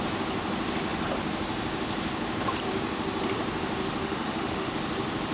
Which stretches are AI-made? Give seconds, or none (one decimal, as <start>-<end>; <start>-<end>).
4.0-4.7